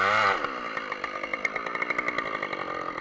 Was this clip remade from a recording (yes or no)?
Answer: no